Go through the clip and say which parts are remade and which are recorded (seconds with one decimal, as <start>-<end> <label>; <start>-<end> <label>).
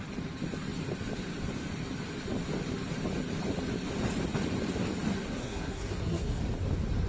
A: 0.0-5.4 recorded; 5.4-6.4 remade; 6.4-7.1 recorded